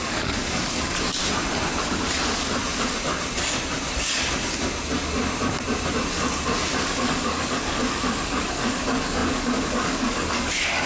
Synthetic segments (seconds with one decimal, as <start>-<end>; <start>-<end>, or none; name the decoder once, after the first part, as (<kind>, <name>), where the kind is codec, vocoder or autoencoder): 0.0-1.2 (codec, DAC); 1.8-2.6; 6.8-10.9